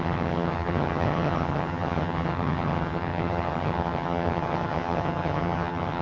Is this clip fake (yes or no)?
yes